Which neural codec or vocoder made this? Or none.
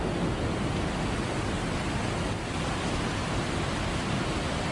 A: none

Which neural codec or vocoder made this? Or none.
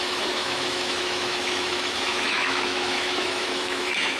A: autoencoder, DAC-VAE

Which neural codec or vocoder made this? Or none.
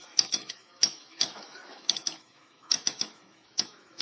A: autoencoder, DAC-VAE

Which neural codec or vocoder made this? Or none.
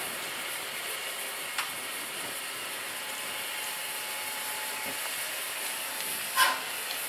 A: none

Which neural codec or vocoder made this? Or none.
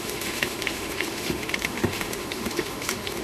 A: autoencoder, DAC-VAE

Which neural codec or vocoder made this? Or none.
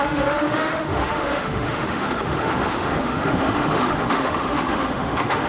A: autoencoder, DAC-VAE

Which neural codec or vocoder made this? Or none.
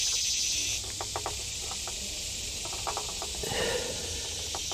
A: none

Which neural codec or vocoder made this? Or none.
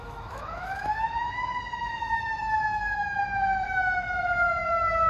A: autoencoder, DAC-VAE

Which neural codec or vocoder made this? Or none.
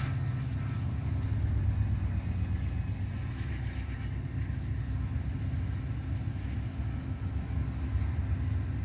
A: none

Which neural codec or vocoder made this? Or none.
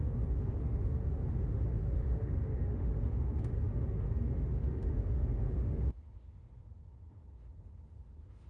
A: autoencoder, DAC-VAE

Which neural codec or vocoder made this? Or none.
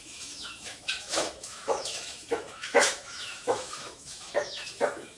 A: autoencoder, DAC-VAE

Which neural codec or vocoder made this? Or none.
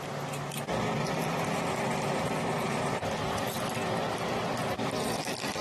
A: none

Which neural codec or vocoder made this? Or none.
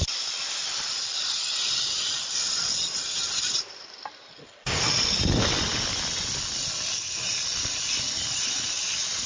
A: none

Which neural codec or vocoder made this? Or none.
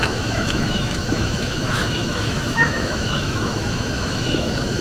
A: autoencoder, DAC-VAE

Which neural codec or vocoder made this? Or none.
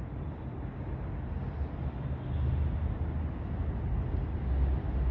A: none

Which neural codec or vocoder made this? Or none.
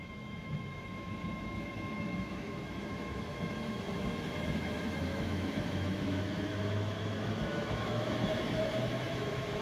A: autoencoder, DAC-VAE